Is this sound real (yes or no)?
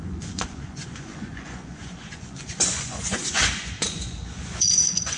no